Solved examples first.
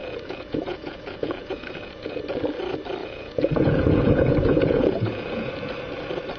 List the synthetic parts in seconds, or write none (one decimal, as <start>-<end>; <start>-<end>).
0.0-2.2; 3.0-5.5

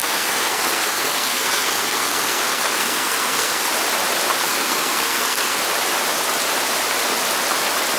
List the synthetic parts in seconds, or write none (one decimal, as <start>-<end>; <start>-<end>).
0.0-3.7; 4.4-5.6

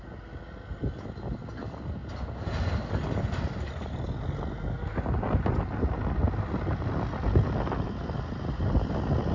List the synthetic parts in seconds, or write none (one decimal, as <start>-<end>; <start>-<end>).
none